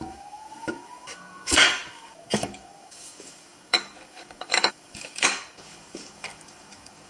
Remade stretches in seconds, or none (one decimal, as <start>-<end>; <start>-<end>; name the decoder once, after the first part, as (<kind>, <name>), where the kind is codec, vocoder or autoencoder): 0.0-7.1 (codec, DAC)

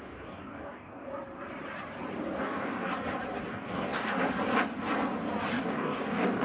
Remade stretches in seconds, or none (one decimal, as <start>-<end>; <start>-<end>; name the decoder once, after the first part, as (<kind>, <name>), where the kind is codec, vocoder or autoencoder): 0.0-1.1 (codec, DAC); 2.4-2.9; 3.5-4.2; 5.5-6.4

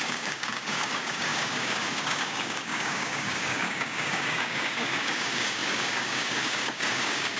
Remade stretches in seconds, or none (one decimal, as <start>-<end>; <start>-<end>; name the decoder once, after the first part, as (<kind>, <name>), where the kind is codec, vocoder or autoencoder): 0.0-7.4 (codec, DAC)